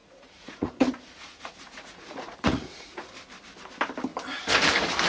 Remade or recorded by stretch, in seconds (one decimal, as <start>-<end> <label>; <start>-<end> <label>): 0.0-3.1 remade; 3.1-5.1 recorded